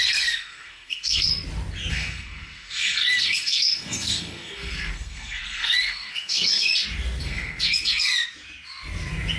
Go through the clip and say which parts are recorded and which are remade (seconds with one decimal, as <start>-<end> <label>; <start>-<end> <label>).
0.0-1.3 remade; 1.3-1.9 recorded; 1.9-6.7 remade; 6.7-7.2 recorded; 7.2-8.1 remade; 8.1-9.4 recorded